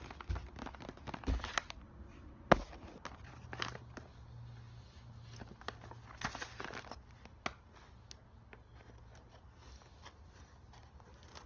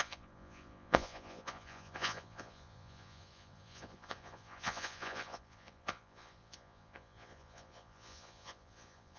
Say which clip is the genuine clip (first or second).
first